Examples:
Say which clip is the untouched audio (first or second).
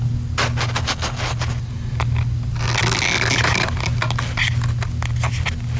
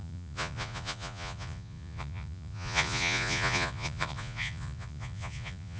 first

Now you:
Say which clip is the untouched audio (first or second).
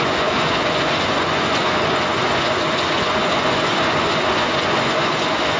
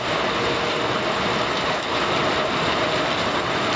second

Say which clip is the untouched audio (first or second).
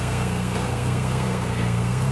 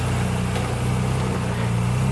second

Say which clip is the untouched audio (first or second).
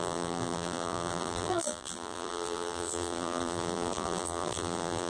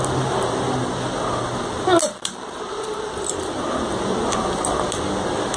second